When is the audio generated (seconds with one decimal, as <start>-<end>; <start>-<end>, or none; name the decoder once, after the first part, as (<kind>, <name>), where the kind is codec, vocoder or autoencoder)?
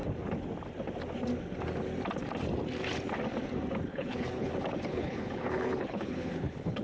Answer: 3.9-4.5 (codec, HILCodec); 4.9-6.8